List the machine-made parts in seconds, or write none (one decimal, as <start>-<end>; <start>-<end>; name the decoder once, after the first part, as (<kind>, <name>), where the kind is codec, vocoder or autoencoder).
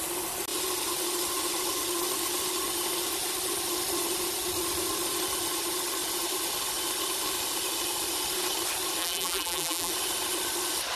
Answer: 9.0-9.9 (vocoder, BigVGAN v2)